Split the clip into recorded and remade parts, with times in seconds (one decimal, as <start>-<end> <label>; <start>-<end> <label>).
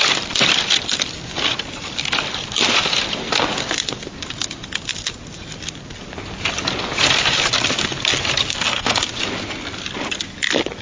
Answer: 0.0-8.5 recorded; 8.5-9.1 remade; 9.1-10.8 recorded